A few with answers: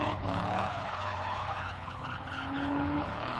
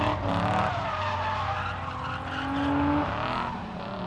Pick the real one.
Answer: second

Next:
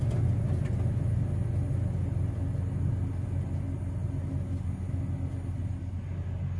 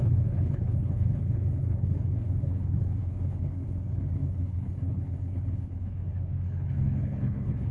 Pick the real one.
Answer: first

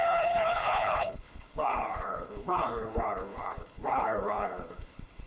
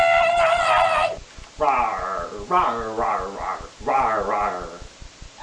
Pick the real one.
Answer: second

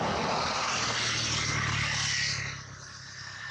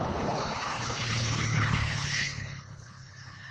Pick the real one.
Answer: first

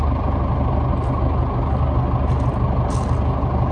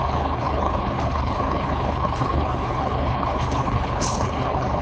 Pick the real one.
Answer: first